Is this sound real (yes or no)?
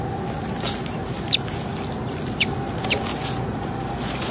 yes